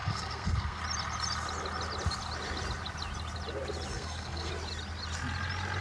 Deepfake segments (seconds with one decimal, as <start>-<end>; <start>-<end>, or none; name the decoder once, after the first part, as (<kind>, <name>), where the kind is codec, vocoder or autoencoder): 0.0-0.8 (codec, SNAC); 3.9-4.5